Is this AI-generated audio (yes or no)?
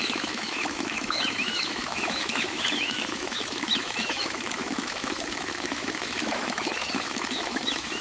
yes